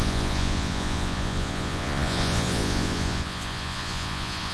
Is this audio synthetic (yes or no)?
yes